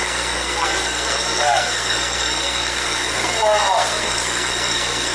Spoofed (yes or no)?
yes